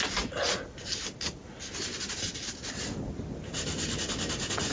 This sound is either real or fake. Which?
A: real